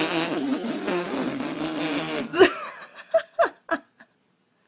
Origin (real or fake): real